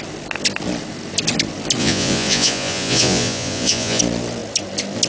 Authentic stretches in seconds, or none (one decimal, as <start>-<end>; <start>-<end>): 0.0-1.8; 4.0-5.1